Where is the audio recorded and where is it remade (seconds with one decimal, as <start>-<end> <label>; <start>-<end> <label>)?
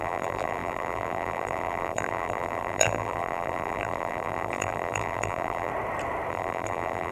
0.0-5.7 remade; 5.7-6.3 recorded; 6.3-7.1 remade